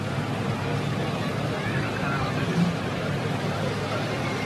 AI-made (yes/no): yes